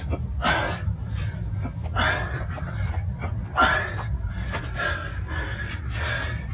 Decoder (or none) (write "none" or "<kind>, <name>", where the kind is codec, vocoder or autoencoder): none